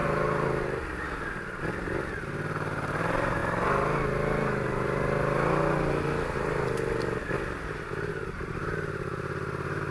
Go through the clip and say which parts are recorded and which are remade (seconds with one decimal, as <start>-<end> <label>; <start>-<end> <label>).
0.0-9.9 recorded